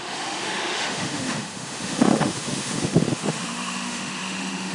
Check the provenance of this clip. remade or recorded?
remade